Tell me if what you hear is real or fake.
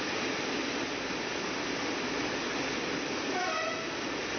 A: real